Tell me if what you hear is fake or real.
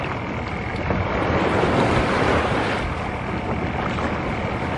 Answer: real